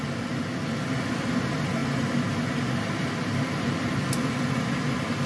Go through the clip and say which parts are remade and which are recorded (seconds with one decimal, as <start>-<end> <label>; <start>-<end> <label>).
0.0-5.3 recorded